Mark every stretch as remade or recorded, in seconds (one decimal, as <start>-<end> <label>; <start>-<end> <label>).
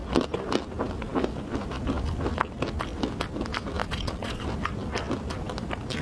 0.0-3.8 recorded; 3.8-4.4 remade; 4.4-6.0 recorded